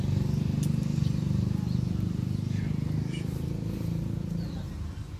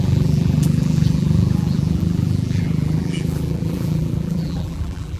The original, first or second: first